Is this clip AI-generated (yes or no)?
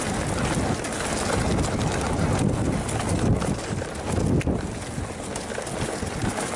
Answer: no